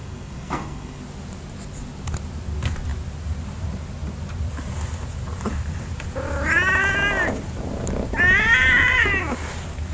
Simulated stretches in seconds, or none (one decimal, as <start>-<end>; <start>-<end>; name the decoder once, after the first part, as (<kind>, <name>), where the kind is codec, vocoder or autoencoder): 0.0-1.0 (codec, SNAC)